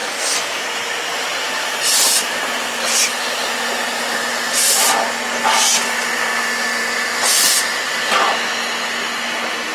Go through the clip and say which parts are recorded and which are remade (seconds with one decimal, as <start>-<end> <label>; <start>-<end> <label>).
0.0-0.6 remade; 0.6-9.7 recorded